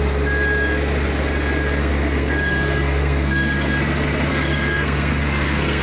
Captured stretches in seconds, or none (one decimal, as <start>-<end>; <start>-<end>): 0.0-1.8; 3.7-4.3

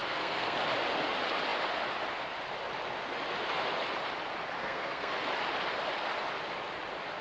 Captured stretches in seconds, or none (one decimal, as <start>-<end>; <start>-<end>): 0.6-4.6; 5.1-7.2

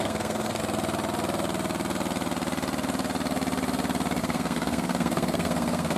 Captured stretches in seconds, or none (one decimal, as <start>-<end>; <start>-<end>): 0.6-4.2

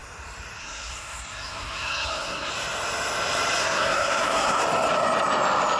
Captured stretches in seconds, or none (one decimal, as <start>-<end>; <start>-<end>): 0.0-0.6; 2.5-3.6; 4.6-5.8

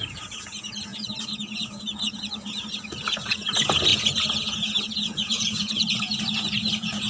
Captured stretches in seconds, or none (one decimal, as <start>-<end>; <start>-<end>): none